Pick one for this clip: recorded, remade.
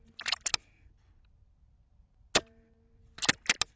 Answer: recorded